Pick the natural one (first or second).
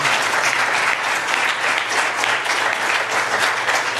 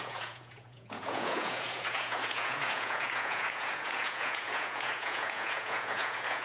first